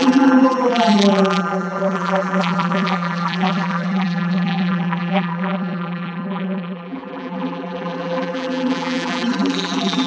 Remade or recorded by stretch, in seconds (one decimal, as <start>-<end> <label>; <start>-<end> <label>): 0.0-10.1 remade